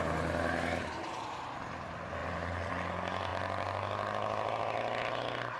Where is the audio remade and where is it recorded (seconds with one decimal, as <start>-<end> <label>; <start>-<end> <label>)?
0.0-5.6 recorded